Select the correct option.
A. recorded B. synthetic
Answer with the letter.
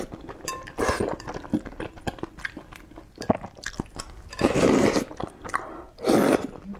A